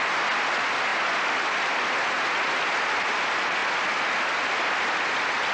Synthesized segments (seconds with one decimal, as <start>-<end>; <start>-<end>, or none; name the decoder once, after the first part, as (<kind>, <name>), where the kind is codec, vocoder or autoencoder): none